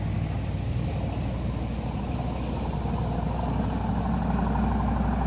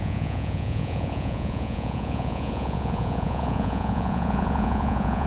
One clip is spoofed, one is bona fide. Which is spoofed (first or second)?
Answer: second